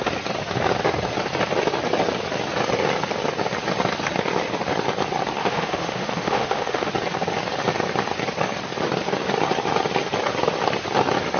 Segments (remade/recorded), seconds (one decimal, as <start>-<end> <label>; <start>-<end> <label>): 0.0-5.4 recorded; 5.4-6.9 remade; 6.9-11.4 recorded